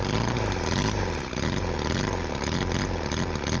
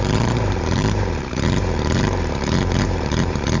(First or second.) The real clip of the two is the first